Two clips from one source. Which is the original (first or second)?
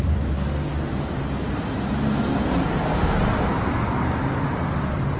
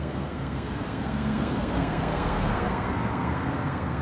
first